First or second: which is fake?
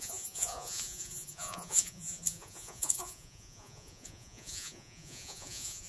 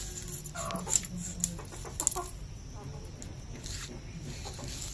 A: first